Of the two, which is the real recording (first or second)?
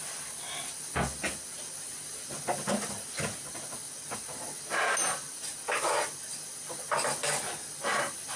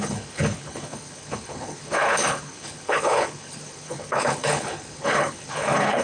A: first